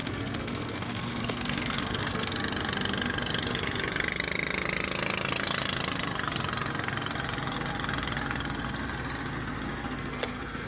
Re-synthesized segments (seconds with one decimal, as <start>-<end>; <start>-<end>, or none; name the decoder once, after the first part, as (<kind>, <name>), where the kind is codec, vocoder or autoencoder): 0.0-2.3 (codec, SNAC); 9.7-10.7